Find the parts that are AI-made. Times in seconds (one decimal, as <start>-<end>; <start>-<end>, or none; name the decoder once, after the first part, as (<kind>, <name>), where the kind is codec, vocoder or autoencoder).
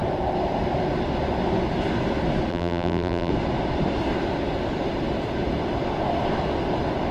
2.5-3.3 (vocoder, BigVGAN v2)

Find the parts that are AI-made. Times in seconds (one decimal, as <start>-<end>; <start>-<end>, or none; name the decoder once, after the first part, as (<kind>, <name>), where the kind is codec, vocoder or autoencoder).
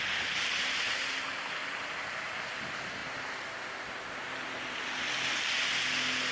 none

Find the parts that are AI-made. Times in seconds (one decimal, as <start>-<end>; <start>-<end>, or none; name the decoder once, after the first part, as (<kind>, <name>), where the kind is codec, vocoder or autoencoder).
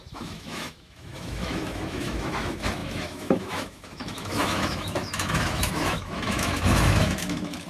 0.0-7.7 (autoencoder, DAC-VAE)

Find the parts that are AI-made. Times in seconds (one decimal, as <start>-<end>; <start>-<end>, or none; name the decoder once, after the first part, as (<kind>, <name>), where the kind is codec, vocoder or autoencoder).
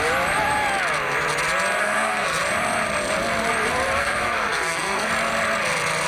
1.8-2.4 (codec, SNAC); 4.0-5.1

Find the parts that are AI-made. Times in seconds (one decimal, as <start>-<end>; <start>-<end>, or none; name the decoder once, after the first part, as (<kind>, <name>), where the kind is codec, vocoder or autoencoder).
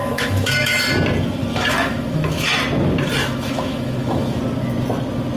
0.0-0.8 (autoencoder, DAC-VAE); 1.5-2.5; 3.2-4.4